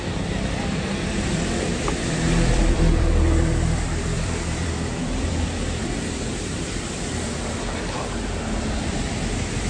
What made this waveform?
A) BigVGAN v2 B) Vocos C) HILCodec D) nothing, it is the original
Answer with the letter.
A